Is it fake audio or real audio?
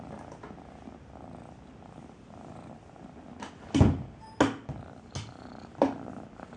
real